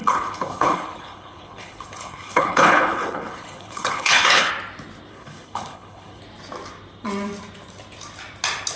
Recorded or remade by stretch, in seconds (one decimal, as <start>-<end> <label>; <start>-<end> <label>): 0.0-4.5 remade; 4.5-5.1 recorded; 5.1-6.2 remade; 6.2-8.8 recorded